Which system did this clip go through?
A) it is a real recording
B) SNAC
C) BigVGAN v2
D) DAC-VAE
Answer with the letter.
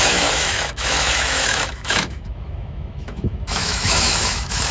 D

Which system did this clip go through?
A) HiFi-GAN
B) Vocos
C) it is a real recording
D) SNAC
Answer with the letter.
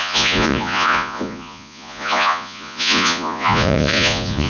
B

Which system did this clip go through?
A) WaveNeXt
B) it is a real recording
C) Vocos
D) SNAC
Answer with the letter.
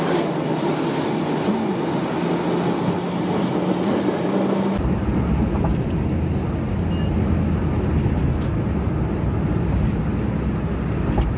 B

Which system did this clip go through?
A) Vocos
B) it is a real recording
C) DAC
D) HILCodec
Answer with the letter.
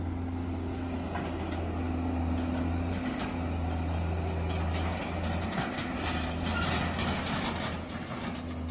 B